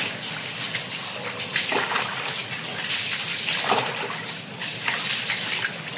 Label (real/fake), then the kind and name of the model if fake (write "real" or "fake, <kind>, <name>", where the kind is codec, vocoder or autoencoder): real